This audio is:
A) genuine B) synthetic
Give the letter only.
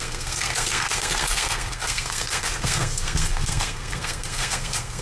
B